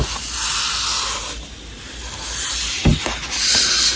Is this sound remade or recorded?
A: recorded